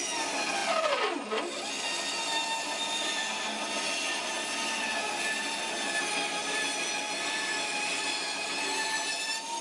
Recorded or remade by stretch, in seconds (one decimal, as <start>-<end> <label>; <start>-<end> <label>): 0.0-9.6 recorded